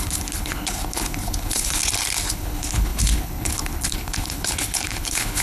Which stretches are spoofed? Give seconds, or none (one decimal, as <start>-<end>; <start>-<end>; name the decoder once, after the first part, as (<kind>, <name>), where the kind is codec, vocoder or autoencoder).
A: 0.0-1.8 (codec, HILCodec); 2.3-5.4